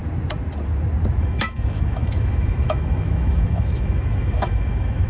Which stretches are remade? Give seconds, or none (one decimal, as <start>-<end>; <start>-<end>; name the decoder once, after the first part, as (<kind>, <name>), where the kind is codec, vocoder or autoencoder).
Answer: 1.2-5.1 (autoencoder, DAC-VAE)